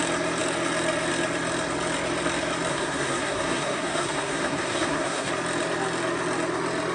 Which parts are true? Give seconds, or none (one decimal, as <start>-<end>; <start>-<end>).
0.0-2.7; 5.3-6.9